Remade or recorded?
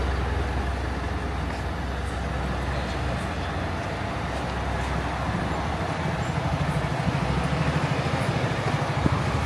recorded